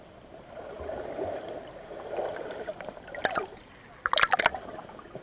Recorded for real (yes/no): yes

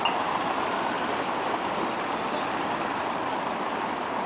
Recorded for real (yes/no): yes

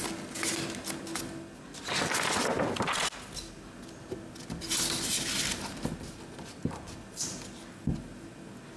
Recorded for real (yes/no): yes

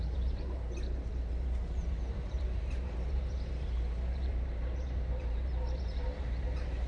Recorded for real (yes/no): no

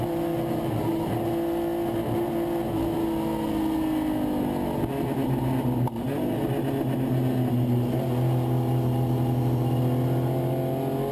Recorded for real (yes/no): yes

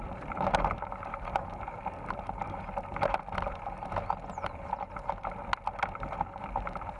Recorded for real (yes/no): yes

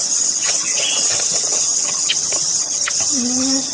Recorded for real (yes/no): no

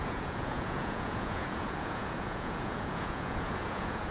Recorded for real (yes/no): no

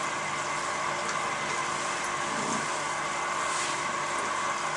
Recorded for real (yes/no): yes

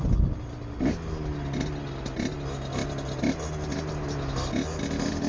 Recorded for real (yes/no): yes